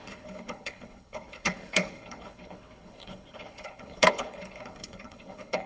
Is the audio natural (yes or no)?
no